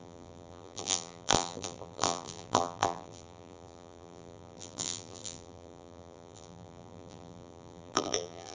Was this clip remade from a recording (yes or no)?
yes